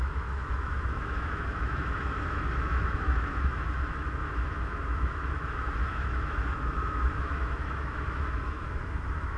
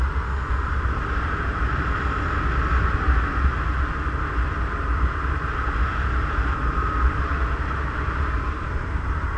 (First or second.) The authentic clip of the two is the second